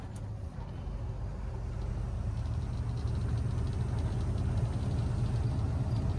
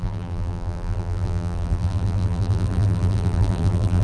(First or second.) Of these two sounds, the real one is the first